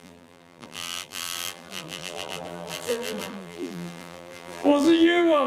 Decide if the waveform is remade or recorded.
remade